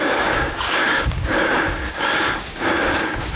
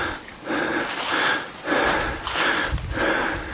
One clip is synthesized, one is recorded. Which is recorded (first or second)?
second